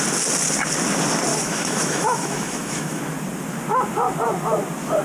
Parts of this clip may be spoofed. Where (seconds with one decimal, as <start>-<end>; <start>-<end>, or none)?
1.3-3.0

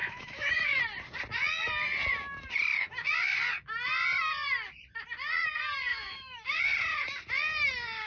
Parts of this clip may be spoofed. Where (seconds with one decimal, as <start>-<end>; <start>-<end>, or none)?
0.0-0.8; 5.9-6.6

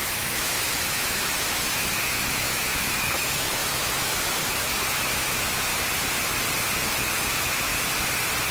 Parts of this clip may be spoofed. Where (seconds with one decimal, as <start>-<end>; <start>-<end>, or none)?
0.0-5.7; 6.8-7.7